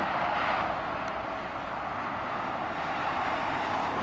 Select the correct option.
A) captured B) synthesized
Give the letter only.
A